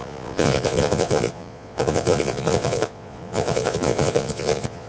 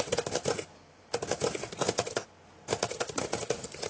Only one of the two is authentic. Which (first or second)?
second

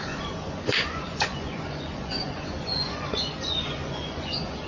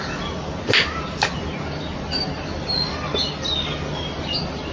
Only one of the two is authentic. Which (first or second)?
second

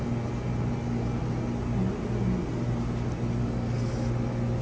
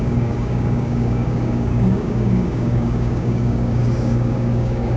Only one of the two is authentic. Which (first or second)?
first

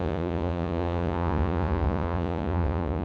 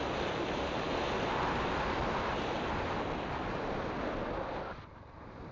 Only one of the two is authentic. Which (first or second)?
second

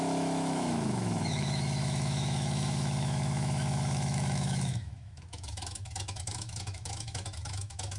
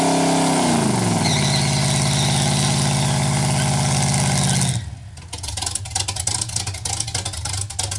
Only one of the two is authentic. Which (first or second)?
second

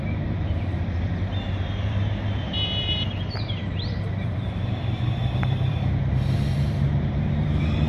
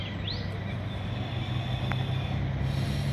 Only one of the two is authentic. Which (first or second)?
second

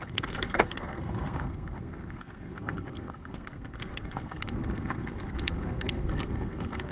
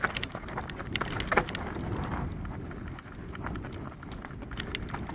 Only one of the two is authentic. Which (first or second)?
second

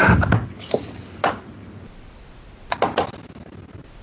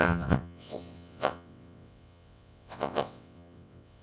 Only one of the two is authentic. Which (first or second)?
first